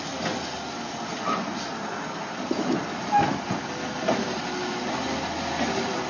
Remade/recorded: recorded